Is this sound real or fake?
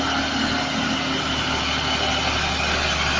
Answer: real